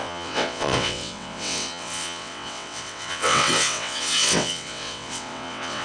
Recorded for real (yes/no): no